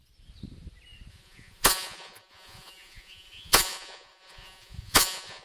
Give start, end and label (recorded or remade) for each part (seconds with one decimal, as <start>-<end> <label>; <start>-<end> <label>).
0.0-1.1 recorded; 1.1-5.4 remade